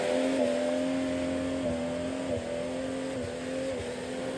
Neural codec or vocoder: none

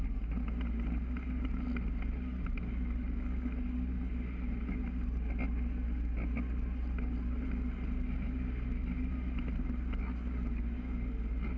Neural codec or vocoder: none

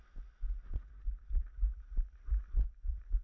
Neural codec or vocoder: none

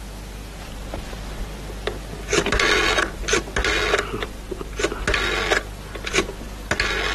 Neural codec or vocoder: none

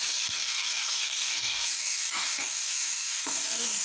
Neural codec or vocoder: codec, DAC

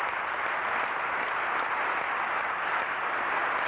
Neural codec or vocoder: none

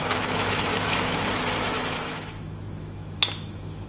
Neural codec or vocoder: autoencoder, DAC-VAE